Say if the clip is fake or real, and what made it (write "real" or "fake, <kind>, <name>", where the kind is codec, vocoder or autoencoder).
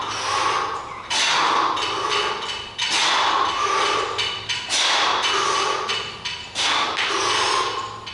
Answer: real